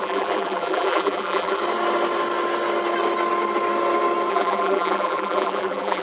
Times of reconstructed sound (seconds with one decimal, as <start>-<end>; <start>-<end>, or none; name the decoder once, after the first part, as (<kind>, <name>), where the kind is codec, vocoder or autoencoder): 0.0-1.6 (vocoder, BigVGAN v2); 4.3-6.0